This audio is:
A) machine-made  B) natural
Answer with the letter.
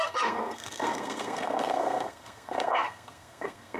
A